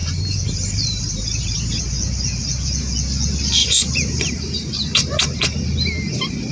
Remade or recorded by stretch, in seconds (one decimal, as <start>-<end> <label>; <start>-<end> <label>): 0.0-1.8 remade; 1.8-3.6 recorded; 3.6-5.4 remade; 5.4-6.5 recorded